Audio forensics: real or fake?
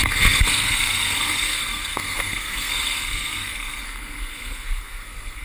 fake